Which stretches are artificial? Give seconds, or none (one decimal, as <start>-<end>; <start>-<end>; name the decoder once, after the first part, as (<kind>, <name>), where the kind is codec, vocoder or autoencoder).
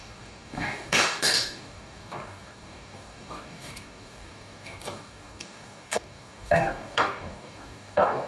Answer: 0.0-8.3 (codec, DAC)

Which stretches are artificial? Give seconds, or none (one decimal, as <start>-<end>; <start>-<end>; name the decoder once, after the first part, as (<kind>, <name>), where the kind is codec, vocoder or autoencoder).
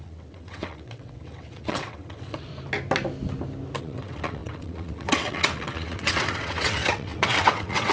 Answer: 0.0-2.5 (vocoder, WaveNeXt); 3.8-7.9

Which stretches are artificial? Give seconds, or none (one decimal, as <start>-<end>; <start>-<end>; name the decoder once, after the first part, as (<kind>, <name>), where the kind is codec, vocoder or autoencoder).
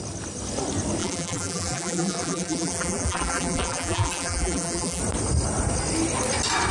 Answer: 1.0-5.0 (vocoder, BigVGAN v2)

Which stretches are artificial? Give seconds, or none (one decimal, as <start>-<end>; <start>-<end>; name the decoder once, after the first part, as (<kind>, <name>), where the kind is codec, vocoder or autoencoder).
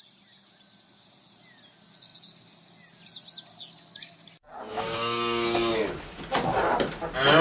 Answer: 4.7-5.8 (codec, DAC)